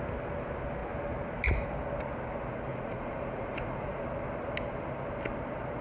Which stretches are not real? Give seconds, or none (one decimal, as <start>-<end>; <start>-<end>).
2.7-4.0